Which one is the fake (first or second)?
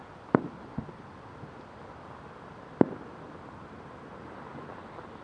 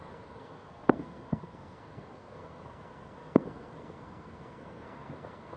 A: second